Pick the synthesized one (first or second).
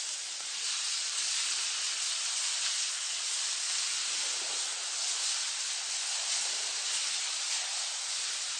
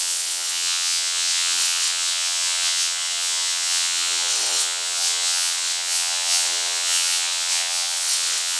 second